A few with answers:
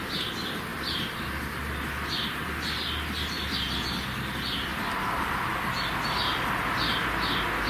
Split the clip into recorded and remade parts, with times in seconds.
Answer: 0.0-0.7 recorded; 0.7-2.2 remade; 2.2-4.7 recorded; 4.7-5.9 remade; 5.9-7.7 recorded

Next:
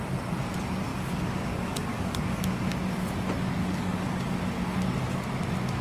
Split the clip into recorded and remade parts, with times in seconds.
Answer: 0.0-0.9 recorded; 0.9-2.6 remade; 2.6-3.6 recorded; 3.6-4.3 remade; 4.3-5.8 recorded

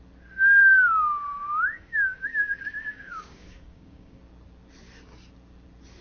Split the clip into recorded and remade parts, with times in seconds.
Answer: 0.0-0.6 recorded; 0.6-4.2 remade; 4.2-6.0 recorded

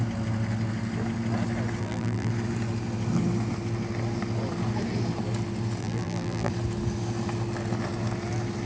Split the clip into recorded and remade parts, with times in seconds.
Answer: 0.0-1.8 recorded; 1.8-2.3 remade; 2.3-5.8 recorded; 5.8-6.5 remade; 6.5-8.7 recorded

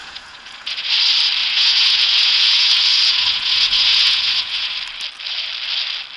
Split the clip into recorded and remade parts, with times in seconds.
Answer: 0.0-0.9 remade; 0.9-1.4 recorded; 1.4-4.7 remade; 4.7-6.2 recorded

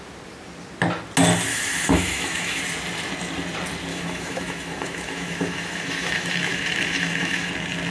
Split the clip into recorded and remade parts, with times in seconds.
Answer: 0.0-1.5 recorded; 1.5-2.6 remade; 2.6-3.9 recorded; 3.9-7.5 remade; 7.5-7.9 recorded